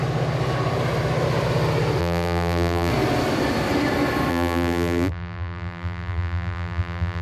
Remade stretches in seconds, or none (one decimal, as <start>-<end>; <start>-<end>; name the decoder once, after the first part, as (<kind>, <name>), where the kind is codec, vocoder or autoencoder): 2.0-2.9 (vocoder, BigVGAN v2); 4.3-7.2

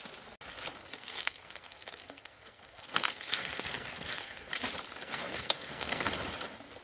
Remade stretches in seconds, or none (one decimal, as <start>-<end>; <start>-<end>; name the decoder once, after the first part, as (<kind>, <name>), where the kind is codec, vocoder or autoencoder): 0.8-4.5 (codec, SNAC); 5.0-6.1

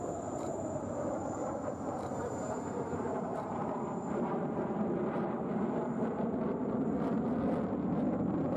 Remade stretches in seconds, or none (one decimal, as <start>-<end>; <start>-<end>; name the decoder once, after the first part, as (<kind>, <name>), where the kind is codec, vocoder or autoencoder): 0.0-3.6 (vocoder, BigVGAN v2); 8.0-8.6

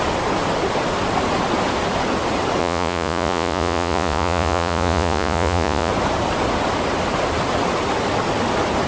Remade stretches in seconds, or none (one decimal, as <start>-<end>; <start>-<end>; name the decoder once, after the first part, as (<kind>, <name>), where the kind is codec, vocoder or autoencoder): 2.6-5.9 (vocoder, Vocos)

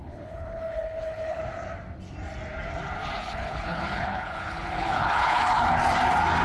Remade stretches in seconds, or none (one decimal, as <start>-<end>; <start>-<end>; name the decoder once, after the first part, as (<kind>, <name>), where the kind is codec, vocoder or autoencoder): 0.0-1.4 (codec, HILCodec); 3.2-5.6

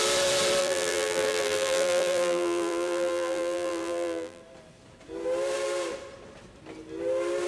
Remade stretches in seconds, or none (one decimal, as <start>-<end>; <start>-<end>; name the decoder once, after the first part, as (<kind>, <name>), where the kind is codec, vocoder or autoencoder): 0.6-4.4 (vocoder, BigVGAN v2)

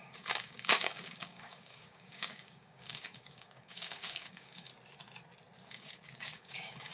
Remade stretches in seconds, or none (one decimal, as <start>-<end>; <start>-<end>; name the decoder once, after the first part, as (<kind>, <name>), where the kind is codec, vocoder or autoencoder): 0.0-4.7 (codec, DAC); 5.7-6.9